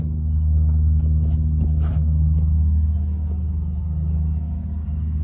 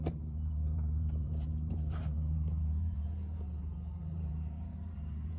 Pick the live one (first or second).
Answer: first